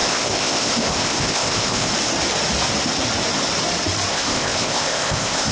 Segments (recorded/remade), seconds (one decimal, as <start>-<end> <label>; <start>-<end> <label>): 0.0-1.9 remade; 1.9-4.1 recorded; 4.1-5.5 remade